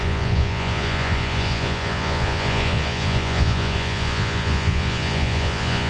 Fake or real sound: fake